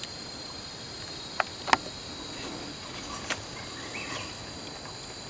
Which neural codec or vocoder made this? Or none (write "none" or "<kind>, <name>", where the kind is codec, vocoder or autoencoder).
none